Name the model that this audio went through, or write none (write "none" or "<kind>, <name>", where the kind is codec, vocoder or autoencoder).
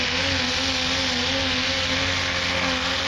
none